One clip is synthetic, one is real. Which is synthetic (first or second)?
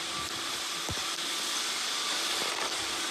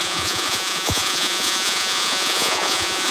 second